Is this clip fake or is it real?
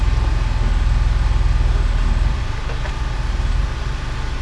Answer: real